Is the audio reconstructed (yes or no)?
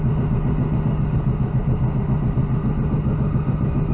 no